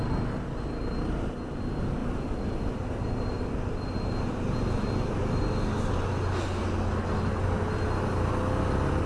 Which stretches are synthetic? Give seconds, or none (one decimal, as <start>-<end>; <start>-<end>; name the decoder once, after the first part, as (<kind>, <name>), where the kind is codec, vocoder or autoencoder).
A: none